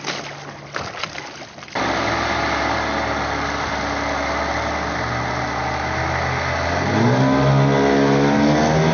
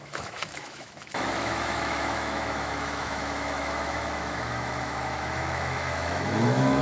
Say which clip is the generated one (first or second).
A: second